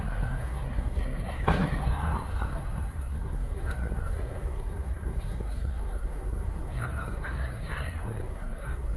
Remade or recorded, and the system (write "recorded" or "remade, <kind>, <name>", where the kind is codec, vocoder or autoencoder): remade, codec, SNAC